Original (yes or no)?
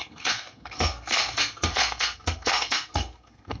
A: no